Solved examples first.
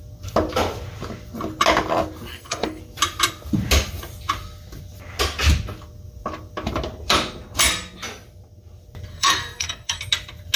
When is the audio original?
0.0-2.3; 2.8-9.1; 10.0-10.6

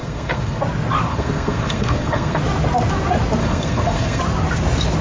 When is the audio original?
0.6-1.1; 2.4-3.4; 4.2-5.0

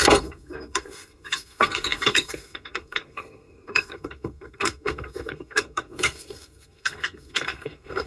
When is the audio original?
none

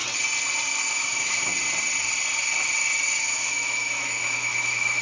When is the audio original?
0.0-0.9; 1.5-3.2

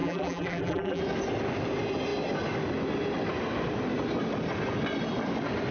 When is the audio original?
1.0-5.7

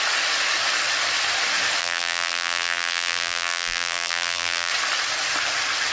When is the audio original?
0.0-1.8; 4.7-5.9

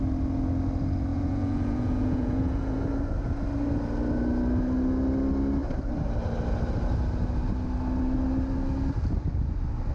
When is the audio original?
0.0-1.1; 2.8-9.9